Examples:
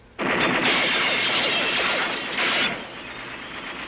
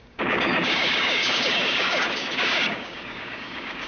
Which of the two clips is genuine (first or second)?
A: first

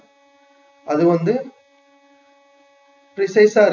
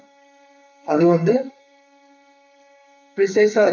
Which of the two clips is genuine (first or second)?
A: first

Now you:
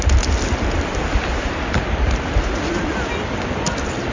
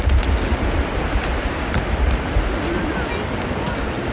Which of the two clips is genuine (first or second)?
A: second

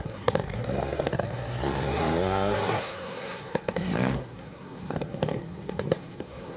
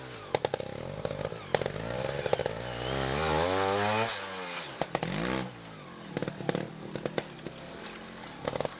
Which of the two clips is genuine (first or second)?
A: second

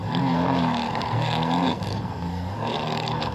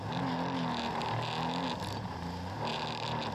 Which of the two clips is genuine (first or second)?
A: second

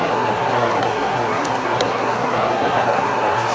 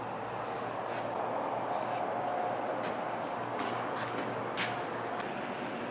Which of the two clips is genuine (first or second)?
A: second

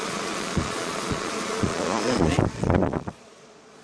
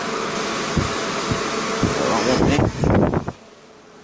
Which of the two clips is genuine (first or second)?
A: second